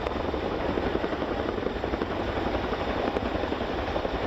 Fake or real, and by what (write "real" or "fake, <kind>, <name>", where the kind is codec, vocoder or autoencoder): real